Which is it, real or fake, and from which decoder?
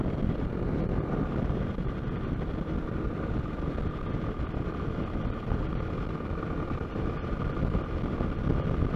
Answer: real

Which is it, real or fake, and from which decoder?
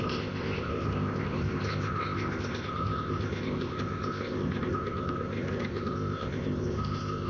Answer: fake, codec, ZipCodec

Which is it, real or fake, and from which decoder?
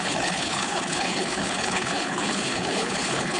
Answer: fake, codec, HILCodec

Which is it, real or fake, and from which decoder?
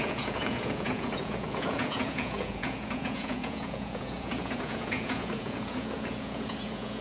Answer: fake, vocoder, Vocos